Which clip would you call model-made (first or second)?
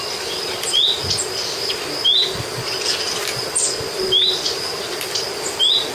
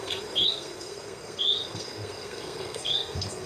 second